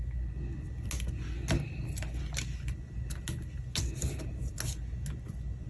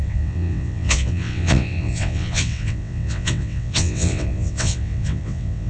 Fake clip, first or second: second